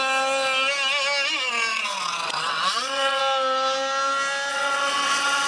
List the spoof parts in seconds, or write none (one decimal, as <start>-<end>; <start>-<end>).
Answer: 1.7-3.2; 4.5-5.5